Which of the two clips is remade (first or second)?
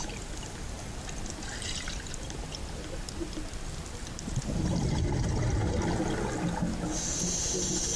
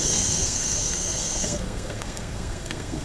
second